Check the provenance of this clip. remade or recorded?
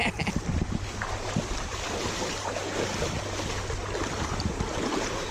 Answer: recorded